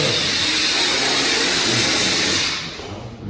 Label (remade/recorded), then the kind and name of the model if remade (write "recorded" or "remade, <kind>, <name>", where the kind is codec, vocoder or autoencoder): recorded